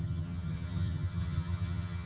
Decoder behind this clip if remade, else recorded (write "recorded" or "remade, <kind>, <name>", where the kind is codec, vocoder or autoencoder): remade, vocoder, HiFi-GAN